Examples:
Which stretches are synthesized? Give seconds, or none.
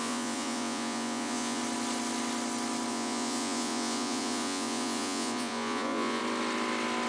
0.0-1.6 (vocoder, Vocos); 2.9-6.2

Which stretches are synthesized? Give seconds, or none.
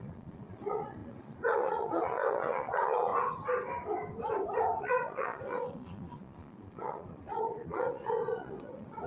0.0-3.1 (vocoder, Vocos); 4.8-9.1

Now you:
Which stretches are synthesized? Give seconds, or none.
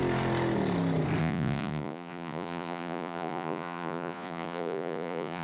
1.2-5.4 (vocoder, Vocos)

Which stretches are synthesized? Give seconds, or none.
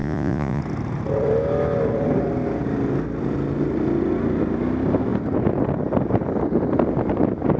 0.0-0.6 (vocoder, Vocos)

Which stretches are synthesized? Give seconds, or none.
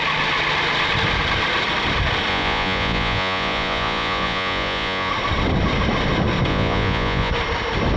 2.3-5.1 (vocoder, Vocos); 6.5-7.3